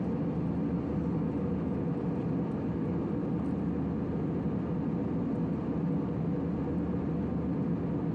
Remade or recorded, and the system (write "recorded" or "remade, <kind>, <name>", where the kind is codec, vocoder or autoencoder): recorded